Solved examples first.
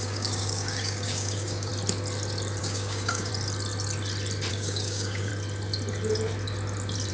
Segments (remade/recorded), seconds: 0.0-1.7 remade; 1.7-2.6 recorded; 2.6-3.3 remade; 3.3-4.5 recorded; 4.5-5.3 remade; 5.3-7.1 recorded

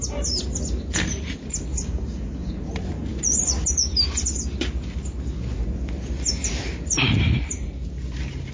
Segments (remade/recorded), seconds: 0.0-1.7 recorded; 1.7-2.5 remade; 2.5-8.5 recorded

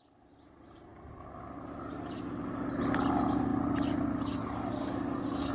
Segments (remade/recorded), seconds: 0.0-4.4 recorded; 4.4-5.5 remade

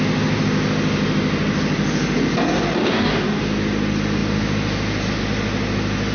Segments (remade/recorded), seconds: 0.0-2.8 recorded; 2.8-3.4 remade; 3.4-6.1 recorded

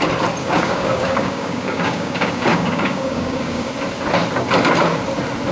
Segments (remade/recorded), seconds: 0.0-0.4 recorded; 0.4-3.7 remade; 3.7-5.5 recorded

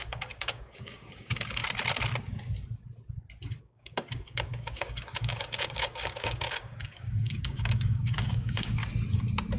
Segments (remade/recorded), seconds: 0.0-1.6 remade; 1.6-3.6 recorded; 3.6-8.8 remade; 8.8-9.6 recorded